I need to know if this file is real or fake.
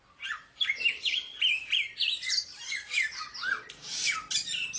real